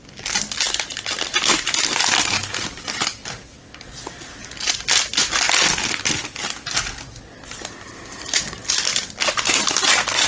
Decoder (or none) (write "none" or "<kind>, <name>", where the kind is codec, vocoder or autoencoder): none